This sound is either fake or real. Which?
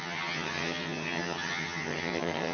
fake